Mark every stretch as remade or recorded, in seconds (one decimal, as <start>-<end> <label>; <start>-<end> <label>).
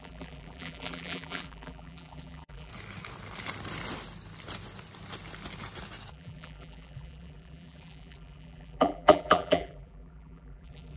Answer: 0.0-2.7 remade; 2.7-6.1 recorded; 6.1-11.0 remade